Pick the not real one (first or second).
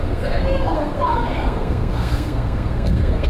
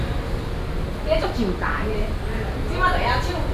first